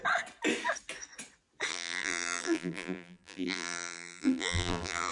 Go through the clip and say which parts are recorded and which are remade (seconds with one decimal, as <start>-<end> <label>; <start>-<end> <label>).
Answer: 0.0-1.7 recorded; 1.7-5.1 remade